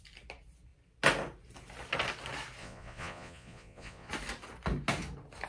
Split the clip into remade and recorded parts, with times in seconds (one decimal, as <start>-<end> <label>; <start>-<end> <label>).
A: 0.0-2.6 recorded; 2.6-4.1 remade; 4.1-5.5 recorded